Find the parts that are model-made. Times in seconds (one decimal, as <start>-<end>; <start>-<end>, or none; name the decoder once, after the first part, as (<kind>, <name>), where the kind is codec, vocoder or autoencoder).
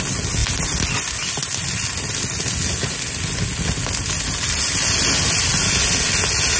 none